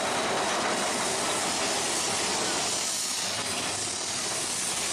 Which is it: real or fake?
real